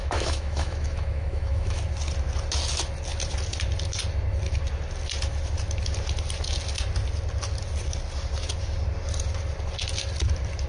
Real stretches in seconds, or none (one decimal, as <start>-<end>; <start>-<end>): 1.8-10.7